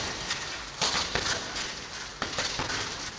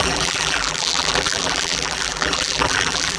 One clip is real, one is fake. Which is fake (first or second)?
second